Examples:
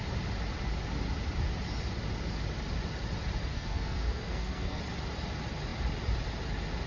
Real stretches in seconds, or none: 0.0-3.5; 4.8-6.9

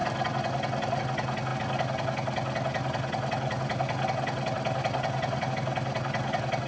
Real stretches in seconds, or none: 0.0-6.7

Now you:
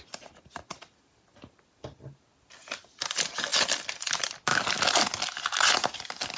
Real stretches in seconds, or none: 0.0-6.4

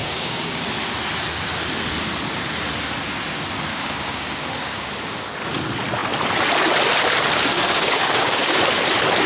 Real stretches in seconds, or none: 0.6-3.7; 4.9-7.5; 8.6-9.3

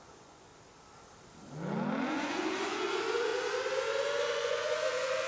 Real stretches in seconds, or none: 0.5-2.0; 3.3-4.2

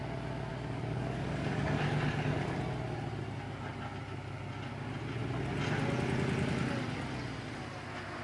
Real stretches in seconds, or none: 0.0-0.5; 2.6-8.2

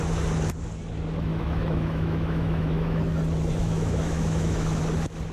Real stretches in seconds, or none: 0.0-1.3; 3.0-3.6; 4.8-5.3